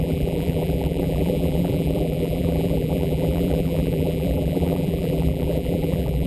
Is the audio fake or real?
fake